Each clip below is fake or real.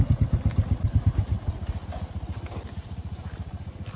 real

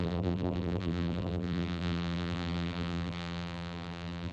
fake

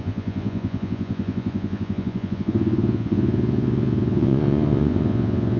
fake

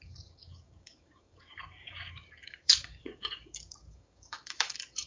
fake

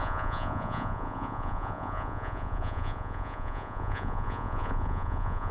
fake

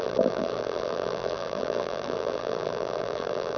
fake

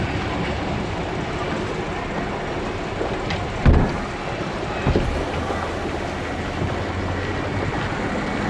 real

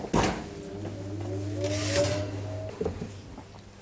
real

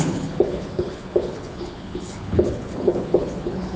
fake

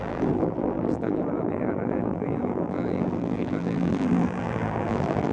fake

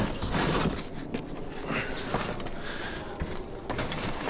real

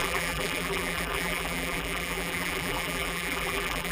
fake